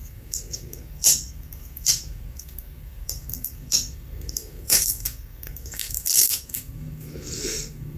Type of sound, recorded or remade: remade